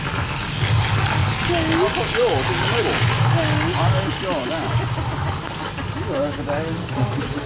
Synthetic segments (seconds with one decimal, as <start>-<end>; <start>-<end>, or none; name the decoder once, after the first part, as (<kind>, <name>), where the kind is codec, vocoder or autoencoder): 6.8-7.5 (codec, SNAC)

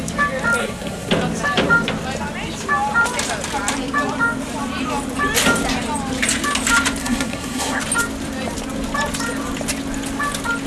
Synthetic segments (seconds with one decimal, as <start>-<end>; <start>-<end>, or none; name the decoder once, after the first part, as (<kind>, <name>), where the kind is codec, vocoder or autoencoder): 0.6-1.1 (codec, SNAC); 7.0-7.8